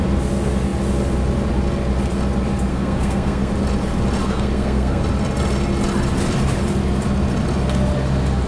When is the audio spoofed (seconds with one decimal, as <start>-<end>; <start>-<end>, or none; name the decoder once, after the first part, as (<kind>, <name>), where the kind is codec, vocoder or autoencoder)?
2.7-3.5 (codec, SNAC); 4.2-5.0